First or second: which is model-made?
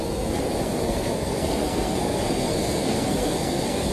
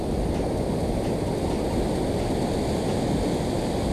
first